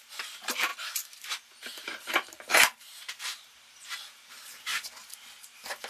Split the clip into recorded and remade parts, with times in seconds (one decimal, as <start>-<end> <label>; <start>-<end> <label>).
0.0-5.9 remade